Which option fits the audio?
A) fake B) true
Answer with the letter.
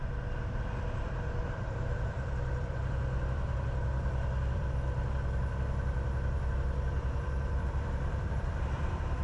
A